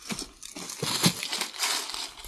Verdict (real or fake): real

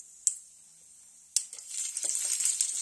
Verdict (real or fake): real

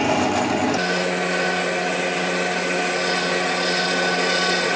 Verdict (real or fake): real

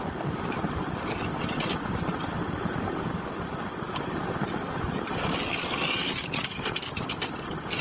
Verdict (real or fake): real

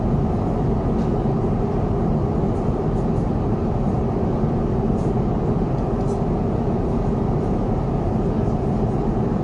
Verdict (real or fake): real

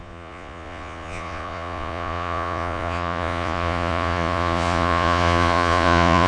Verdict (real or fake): fake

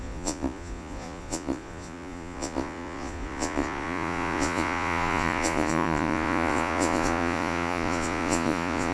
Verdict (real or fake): fake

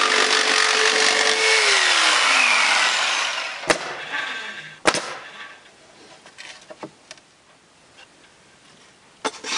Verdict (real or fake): real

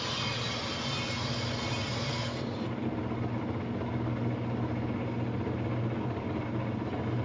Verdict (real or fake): real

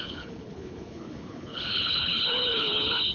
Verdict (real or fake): fake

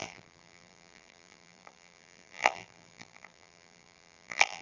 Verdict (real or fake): fake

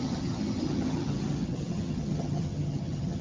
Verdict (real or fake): fake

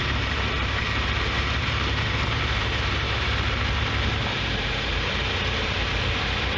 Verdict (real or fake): fake